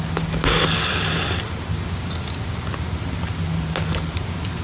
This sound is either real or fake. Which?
real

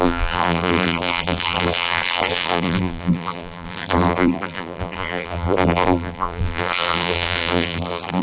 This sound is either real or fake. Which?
fake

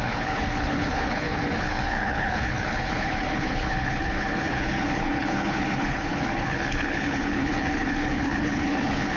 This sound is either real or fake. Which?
fake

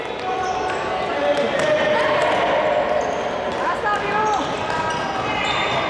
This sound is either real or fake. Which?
real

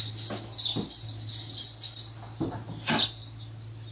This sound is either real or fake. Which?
real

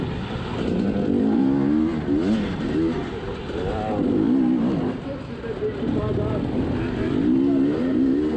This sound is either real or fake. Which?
real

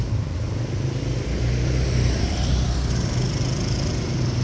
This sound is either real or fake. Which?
fake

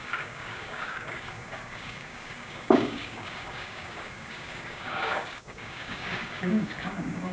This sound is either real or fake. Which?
fake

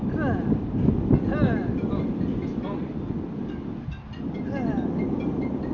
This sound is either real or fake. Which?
real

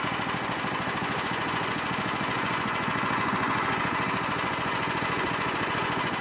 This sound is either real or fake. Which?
fake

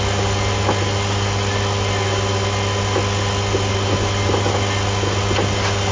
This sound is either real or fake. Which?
real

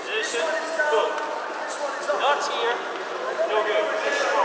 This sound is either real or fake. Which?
real